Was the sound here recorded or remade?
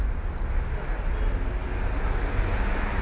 recorded